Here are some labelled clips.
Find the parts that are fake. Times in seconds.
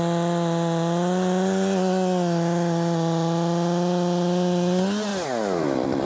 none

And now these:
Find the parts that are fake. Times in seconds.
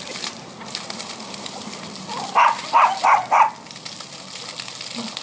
none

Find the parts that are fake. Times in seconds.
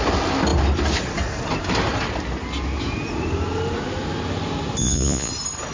4.8-5.3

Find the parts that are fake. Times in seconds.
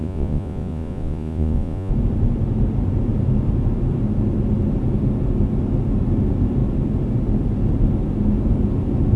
0.0-1.9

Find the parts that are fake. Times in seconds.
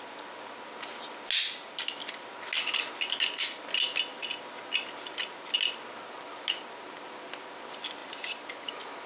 none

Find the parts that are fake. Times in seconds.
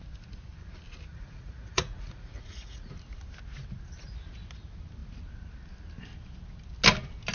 1.1-2.9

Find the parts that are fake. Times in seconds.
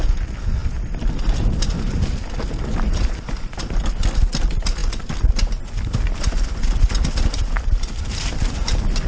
none